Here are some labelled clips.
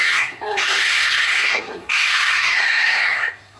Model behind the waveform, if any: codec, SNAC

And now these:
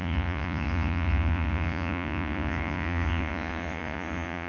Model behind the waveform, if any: vocoder, Vocos